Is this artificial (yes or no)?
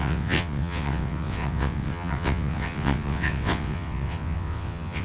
yes